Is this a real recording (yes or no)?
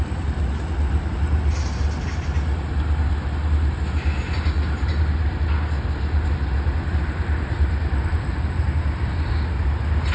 yes